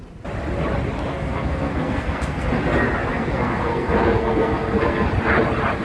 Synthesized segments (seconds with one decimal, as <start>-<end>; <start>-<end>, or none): 1.1-2.5; 3.1-5.1